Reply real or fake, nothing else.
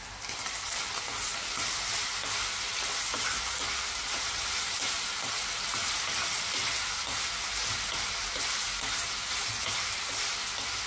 real